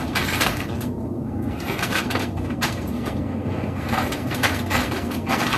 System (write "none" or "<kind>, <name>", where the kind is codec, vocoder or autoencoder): codec, SNAC